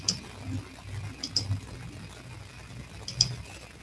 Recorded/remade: recorded